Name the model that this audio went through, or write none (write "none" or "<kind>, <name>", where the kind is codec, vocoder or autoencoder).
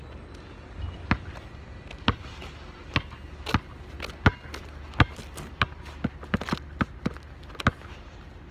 none